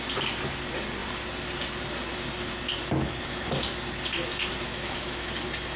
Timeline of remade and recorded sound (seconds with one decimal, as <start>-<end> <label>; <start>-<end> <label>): 0.0-4.7 recorded; 4.7-5.3 remade; 5.3-5.8 recorded